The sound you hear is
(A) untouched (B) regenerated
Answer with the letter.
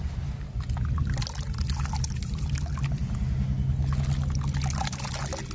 A